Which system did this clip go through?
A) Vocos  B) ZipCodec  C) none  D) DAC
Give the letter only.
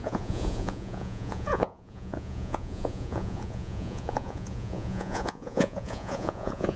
A